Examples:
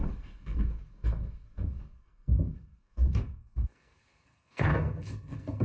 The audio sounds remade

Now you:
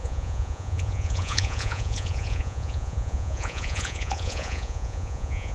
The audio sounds remade